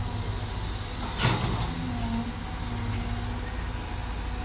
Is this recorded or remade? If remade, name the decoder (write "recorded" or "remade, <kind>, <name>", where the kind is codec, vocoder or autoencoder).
recorded